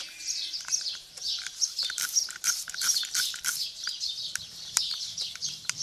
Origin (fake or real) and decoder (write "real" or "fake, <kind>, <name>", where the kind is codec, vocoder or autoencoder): fake, vocoder, BigVGAN v2